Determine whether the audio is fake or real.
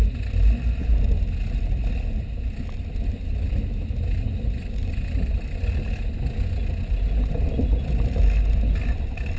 real